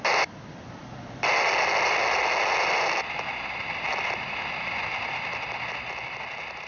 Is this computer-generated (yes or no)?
no